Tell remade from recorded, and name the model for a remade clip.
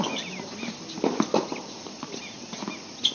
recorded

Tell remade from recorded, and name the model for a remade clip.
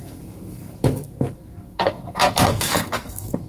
remade, codec, SNAC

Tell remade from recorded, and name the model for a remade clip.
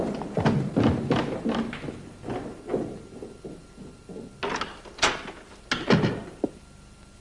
recorded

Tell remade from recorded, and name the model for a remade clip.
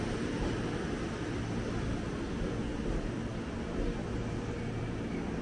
recorded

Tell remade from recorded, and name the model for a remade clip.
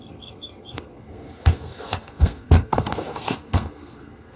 remade, codec, SNAC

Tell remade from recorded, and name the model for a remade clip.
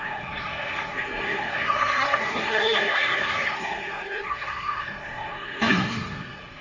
remade, codec, SNAC